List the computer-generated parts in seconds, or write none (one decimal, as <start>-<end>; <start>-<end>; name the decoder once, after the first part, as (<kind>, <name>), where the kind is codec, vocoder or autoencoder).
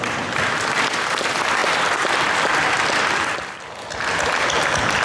none